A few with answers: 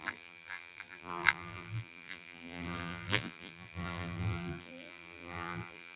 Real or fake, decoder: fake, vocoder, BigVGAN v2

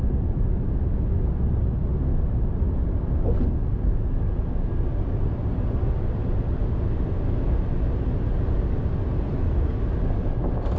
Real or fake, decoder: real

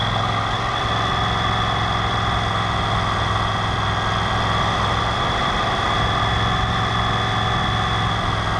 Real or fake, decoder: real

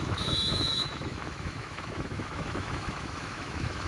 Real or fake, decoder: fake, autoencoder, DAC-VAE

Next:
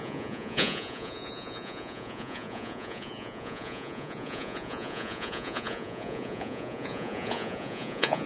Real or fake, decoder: fake, vocoder, Vocos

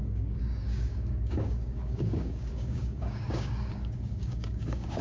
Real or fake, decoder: fake, codec, DAC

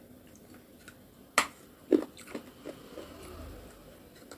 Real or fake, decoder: real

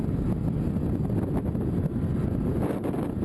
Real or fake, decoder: real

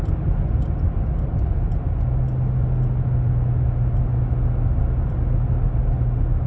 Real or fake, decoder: real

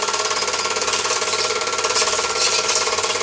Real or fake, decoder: real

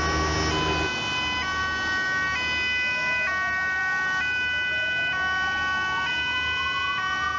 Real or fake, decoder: real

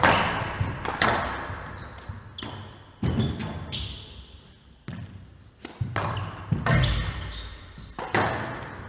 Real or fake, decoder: real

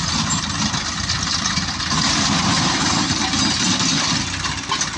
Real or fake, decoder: real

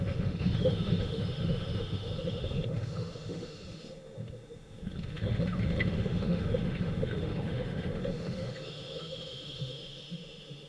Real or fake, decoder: fake, autoencoder, DAC-VAE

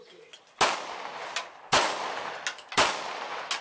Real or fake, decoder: real